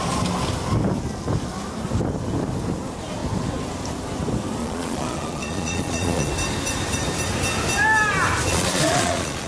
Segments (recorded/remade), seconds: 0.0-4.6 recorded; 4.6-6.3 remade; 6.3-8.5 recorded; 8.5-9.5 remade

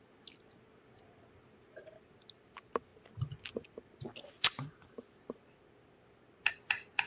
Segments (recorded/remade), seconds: 0.0-7.1 recorded

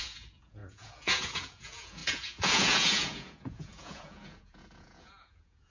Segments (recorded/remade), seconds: 0.0-5.7 remade

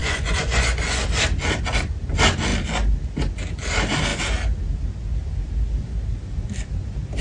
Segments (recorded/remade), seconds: 0.0-1.0 remade; 1.0-7.2 recorded

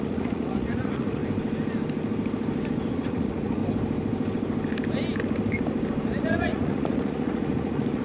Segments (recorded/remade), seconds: 0.0-1.2 remade; 1.2-2.9 recorded; 2.9-3.6 remade; 3.6-6.1 recorded; 6.1-8.0 remade

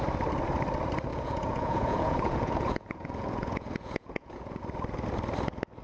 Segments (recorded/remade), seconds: 0.0-1.1 recorded; 1.1-4.6 remade; 4.6-5.8 recorded